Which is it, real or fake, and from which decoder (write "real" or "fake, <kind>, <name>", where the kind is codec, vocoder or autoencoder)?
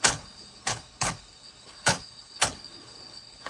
fake, codec, HILCodec